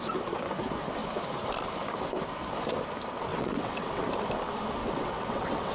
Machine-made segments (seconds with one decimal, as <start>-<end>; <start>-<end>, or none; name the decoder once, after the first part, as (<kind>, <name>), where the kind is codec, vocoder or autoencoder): 3.3-4.0 (vocoder, WaveNeXt); 4.8-5.7